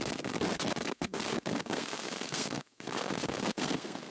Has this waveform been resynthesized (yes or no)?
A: yes